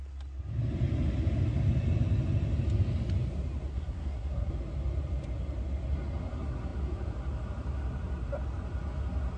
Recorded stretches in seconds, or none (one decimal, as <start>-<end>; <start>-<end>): 0.0-3.7; 4.5-9.4

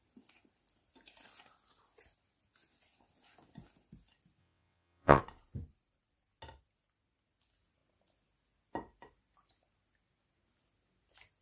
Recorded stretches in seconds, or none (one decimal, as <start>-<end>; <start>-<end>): 0.0-4.4; 5.2-11.4

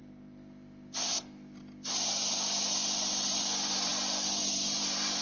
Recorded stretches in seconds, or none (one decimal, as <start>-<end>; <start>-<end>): 3.9-4.4

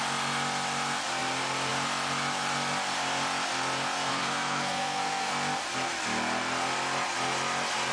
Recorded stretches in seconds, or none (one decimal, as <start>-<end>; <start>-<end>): 0.0-4.1; 5.3-7.9